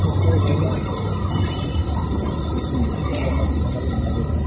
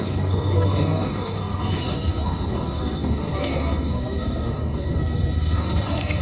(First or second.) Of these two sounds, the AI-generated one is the second